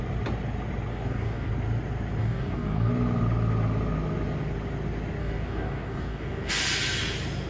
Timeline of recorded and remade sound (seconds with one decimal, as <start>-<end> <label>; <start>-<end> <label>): 0.0-0.9 recorded; 0.9-1.5 remade; 1.5-2.2 recorded; 2.2-2.9 remade; 2.9-5.2 recorded; 5.2-6.5 remade; 6.5-7.5 recorded